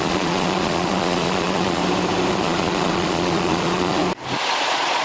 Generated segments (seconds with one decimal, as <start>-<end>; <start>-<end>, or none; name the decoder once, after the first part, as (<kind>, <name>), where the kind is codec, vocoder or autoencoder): 0.0-1.8 (vocoder, Vocos); 2.3-4.0; 4.6-5.0